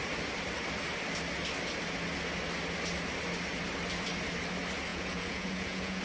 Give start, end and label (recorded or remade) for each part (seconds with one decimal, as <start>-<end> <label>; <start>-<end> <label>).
0.0-4.9 recorded; 4.9-6.0 remade